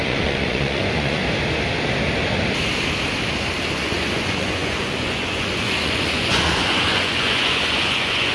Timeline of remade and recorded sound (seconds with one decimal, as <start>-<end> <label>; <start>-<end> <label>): 0.0-1.2 remade; 1.2-3.7 recorded; 3.7-8.3 remade